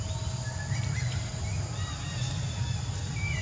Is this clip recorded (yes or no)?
yes